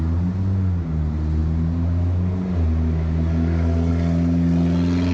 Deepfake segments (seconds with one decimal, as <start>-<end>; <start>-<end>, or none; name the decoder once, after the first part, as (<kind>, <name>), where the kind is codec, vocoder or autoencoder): none

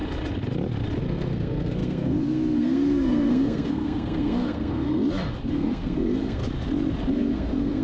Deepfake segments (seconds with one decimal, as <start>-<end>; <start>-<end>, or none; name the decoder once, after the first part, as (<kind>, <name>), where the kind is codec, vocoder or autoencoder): 1.0-5.0 (codec, SNAC); 5.5-6.4; 7.1-7.8